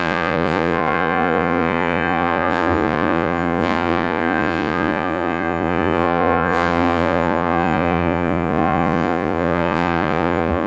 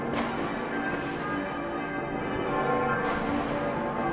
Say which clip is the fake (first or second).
first